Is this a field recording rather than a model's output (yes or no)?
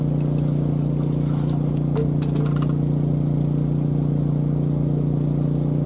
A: yes